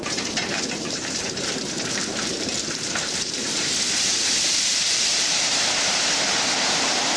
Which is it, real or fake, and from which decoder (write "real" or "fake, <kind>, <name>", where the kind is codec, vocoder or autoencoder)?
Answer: fake, vocoder, BigVGAN v2